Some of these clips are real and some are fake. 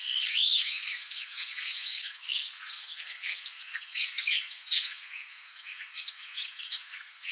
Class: fake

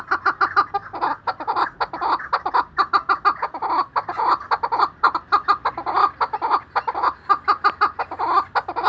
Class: real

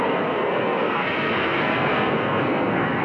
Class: fake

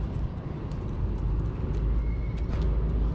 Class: real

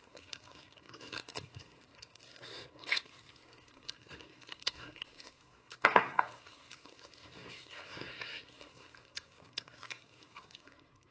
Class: fake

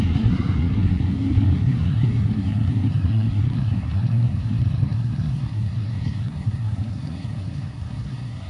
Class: fake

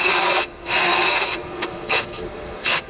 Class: fake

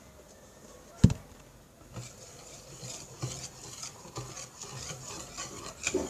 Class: real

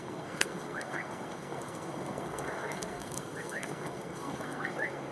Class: fake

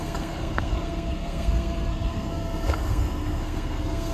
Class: fake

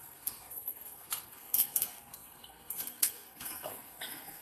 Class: fake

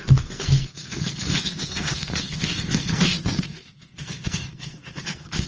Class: fake